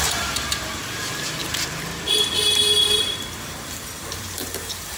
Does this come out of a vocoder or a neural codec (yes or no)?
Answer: yes